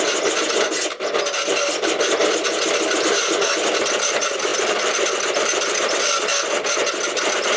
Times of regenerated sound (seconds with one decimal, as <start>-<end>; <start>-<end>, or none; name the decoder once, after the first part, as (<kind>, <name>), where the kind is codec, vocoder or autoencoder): 4.5-6.3 (vocoder, BigVGAN v2)